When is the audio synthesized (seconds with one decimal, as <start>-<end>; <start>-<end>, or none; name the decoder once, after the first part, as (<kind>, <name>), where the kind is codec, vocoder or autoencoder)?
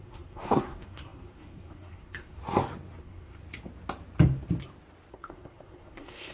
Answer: 0.0-2.4 (codec, SNAC); 3.0-3.4; 5.1-6.3